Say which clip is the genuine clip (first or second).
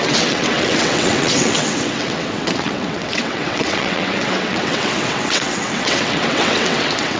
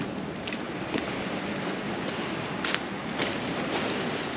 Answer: second